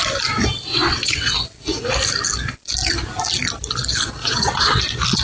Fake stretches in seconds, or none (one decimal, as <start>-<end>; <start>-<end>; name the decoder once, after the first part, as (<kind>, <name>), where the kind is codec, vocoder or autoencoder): 0.7-1.3 (vocoder, WaveNeXt); 4.2-4.8